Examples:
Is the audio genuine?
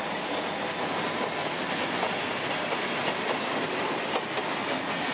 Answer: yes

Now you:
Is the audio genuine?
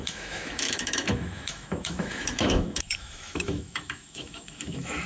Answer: no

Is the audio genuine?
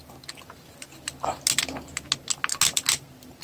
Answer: yes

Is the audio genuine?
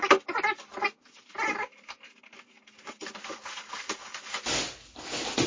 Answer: yes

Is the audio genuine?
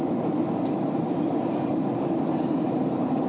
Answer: no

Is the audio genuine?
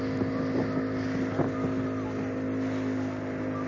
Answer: yes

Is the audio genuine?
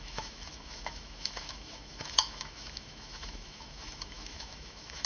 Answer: no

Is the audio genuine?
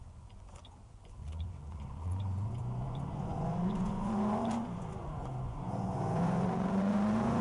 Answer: no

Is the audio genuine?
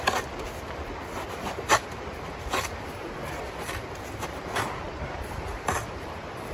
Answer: yes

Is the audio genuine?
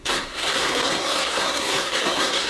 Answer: no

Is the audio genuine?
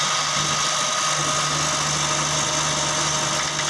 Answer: yes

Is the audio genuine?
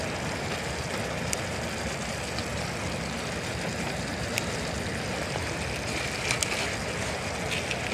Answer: yes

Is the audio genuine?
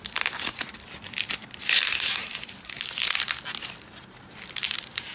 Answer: no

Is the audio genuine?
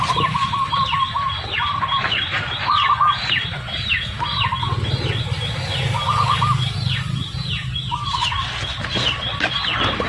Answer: yes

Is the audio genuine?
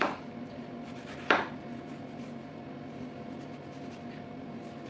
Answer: yes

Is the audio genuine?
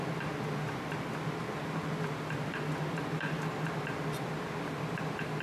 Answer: yes